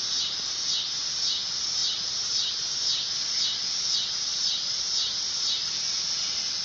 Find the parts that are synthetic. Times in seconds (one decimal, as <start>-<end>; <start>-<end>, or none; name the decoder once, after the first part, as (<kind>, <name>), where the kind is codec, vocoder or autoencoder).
1.8-2.7 (vocoder, BigVGAN v2); 4.3-5.3

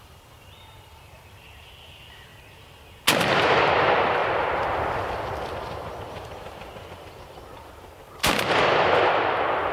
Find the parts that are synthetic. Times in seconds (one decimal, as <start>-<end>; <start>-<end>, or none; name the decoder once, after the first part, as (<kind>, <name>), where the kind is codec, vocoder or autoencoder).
0.0-2.3 (vocoder, BigVGAN v2); 3.1-9.7

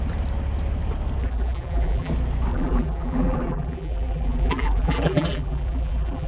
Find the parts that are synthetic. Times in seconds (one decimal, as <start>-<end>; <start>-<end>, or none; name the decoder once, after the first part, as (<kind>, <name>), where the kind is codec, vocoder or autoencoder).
1.2-2.1 (vocoder, BigVGAN v2); 2.5-6.3

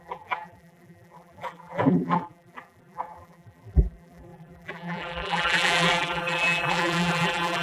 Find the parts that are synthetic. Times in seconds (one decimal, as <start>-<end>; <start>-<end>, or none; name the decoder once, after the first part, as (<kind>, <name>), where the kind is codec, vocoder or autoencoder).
0.0-7.6 (vocoder, BigVGAN v2)

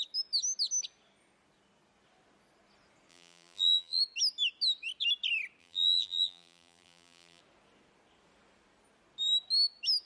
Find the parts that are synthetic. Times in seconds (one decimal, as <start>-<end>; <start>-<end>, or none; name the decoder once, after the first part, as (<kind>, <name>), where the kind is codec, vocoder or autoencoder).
3.1-4.0 (vocoder, BigVGAN v2); 5.6-7.4

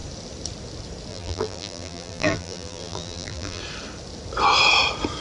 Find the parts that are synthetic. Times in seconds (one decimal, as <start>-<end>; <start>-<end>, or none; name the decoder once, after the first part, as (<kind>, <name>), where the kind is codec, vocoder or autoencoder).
1.1-3.6 (vocoder, BigVGAN v2)

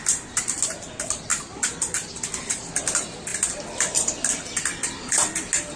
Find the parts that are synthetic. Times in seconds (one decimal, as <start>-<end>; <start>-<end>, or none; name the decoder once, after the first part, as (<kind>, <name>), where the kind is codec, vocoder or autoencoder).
1.3-2.8 (vocoder, BigVGAN v2)